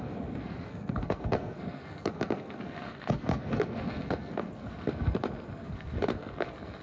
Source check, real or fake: fake